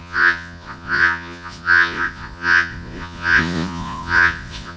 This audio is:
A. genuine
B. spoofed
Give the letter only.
B